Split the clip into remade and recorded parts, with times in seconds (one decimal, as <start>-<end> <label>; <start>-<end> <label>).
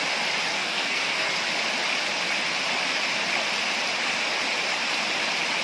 0.0-0.5 recorded; 0.5-1.3 remade; 1.3-5.6 recorded